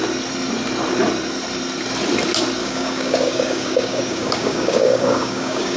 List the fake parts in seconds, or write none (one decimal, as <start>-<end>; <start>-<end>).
2.6-5.8